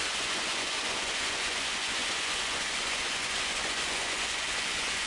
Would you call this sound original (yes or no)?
no